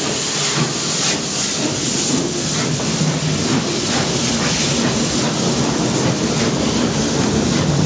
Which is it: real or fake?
real